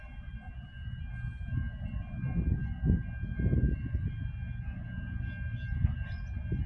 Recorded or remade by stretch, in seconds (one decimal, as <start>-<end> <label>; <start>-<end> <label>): 0.0-6.7 recorded